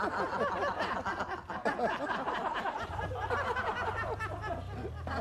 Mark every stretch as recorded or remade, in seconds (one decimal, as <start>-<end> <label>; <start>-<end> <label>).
0.0-5.2 recorded